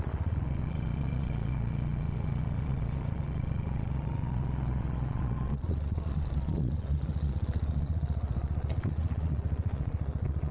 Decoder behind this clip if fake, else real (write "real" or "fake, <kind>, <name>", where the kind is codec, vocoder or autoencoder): fake, vocoder, Vocos